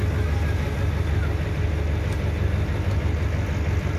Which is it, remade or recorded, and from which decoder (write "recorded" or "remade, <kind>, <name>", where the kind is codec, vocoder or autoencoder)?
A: recorded